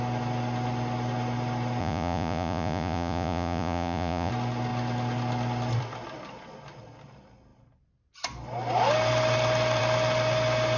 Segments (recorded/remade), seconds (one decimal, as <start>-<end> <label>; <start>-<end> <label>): 0.0-1.8 recorded; 1.8-4.3 remade; 4.3-10.8 recorded